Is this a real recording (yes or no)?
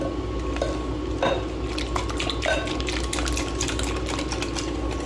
yes